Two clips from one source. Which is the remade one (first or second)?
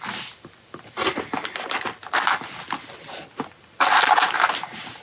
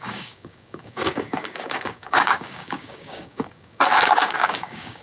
second